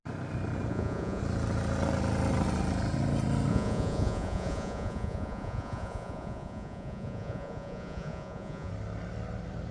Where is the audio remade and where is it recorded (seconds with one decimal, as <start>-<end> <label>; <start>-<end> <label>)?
0.0-0.7 recorded; 0.7-1.2 remade; 1.2-3.5 recorded; 3.5-8.7 remade; 8.7-9.7 recorded